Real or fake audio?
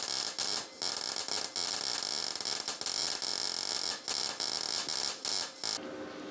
real